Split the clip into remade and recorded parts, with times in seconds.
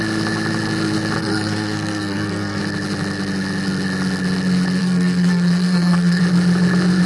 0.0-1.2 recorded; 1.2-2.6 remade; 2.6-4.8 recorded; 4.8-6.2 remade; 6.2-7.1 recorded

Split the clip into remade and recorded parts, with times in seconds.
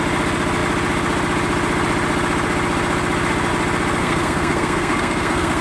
0.0-4.0 recorded; 4.0-5.6 remade